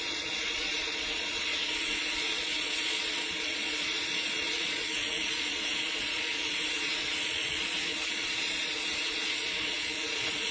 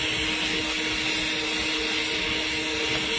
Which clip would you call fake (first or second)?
first